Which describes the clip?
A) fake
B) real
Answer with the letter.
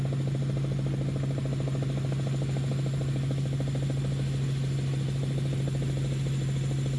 B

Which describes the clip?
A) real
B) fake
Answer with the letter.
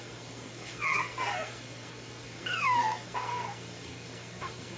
B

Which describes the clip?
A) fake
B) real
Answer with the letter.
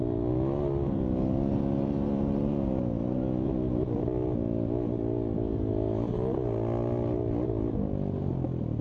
B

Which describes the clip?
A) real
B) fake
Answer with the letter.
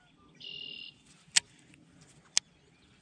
A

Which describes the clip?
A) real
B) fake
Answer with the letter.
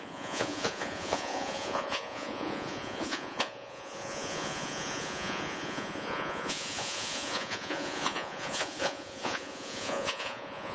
B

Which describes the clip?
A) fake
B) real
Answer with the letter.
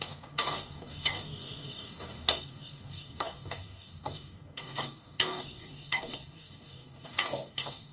A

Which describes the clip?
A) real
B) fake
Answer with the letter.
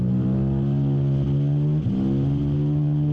A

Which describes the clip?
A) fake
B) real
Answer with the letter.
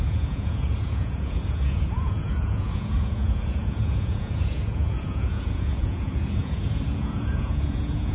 A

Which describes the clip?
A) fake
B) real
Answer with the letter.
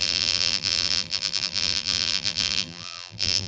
A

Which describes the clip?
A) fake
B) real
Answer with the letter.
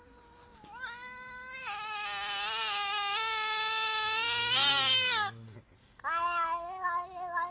B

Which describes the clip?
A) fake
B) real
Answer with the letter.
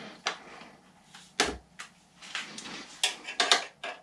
B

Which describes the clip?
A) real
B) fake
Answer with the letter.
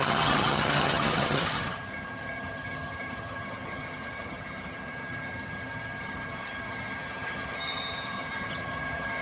B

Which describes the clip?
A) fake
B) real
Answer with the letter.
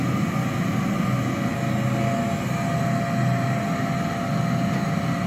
B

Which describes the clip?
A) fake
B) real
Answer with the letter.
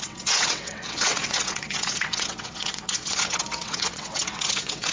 A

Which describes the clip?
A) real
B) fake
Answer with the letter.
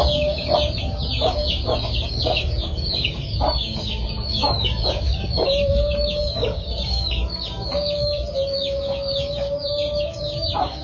B